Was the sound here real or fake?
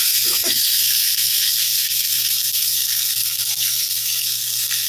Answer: fake